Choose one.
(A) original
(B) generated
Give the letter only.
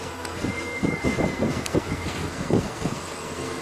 B